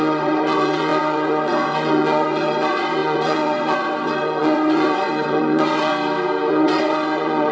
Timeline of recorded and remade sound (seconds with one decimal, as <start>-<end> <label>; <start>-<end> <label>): 0.0-5.9 remade; 5.9-6.5 recorded; 6.5-7.5 remade